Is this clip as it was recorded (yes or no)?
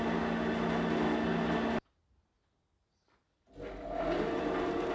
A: yes